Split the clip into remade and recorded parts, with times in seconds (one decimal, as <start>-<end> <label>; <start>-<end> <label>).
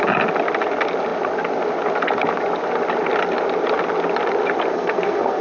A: 0.0-4.7 recorded; 4.7-5.4 remade